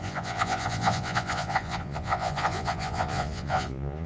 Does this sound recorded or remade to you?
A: remade